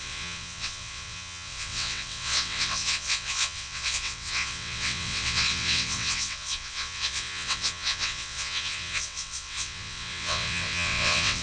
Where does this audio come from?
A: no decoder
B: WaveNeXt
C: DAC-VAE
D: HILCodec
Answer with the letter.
B